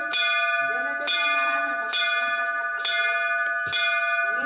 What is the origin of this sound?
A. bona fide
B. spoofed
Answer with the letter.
A